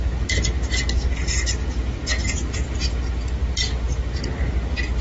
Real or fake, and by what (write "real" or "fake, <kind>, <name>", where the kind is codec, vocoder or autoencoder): real